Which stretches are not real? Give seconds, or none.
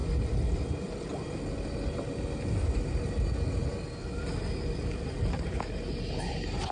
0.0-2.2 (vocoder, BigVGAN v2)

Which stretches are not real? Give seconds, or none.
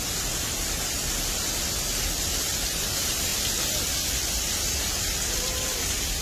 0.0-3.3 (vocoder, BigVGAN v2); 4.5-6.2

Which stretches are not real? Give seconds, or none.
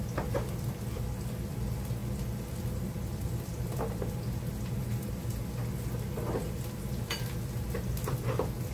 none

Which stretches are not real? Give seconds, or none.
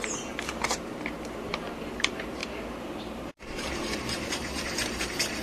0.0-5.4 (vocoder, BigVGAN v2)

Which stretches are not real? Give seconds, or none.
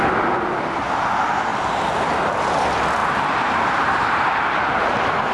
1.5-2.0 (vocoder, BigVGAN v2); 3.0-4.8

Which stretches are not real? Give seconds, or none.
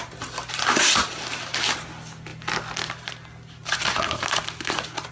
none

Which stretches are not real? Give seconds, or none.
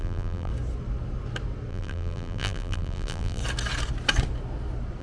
0.0-0.5 (vocoder, BigVGAN v2); 1.7-3.4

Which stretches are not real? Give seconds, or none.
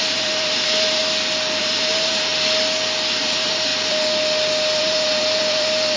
0.0-1.0 (vocoder, BigVGAN v2); 1.6-2.3; 3.2-3.7; 4.8-6.0